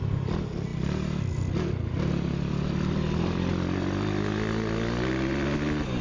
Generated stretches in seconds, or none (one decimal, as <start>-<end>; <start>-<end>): none